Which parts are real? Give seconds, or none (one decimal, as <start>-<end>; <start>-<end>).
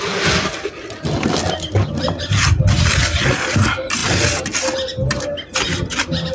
0.0-6.3